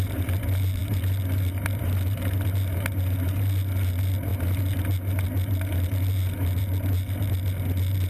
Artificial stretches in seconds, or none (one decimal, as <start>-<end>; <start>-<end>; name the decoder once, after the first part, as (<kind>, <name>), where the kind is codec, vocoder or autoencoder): none